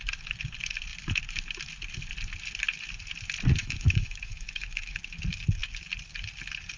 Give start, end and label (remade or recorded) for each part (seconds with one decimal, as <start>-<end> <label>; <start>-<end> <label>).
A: 0.0-3.6 recorded; 3.6-5.0 remade; 5.0-6.8 recorded